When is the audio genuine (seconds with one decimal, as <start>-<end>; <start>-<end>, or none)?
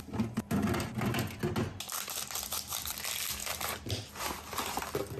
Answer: 0.0-5.2